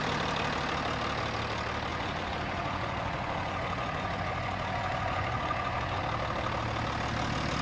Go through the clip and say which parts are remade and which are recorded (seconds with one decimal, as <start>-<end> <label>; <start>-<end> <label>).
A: 0.0-1.9 recorded; 1.9-6.0 remade; 6.0-7.6 recorded